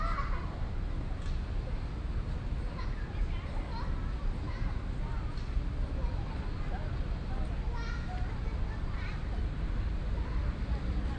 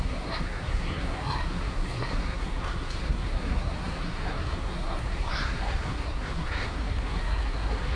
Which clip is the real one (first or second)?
first